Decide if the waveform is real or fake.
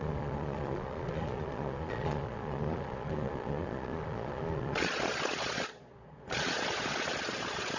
fake